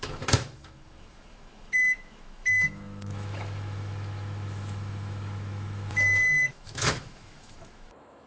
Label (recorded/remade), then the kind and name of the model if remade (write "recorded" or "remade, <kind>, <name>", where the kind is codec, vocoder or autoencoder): remade, autoencoder, DAC-VAE